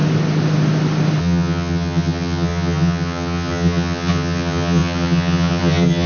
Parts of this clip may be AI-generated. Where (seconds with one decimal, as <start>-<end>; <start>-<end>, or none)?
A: 1.2-6.1